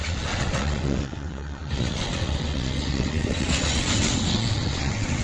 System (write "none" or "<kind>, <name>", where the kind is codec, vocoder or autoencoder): vocoder, WaveNeXt